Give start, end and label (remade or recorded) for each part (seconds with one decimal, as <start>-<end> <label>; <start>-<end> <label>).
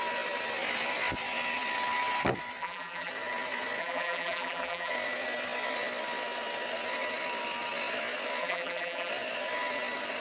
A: 0.0-2.6 recorded; 2.6-3.1 remade; 3.1-3.8 recorded; 3.8-4.9 remade; 4.9-8.4 recorded; 8.4-9.1 remade; 9.1-10.2 recorded